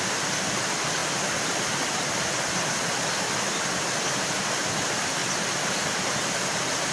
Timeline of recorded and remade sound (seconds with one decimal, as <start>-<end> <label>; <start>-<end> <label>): 0.0-6.9 recorded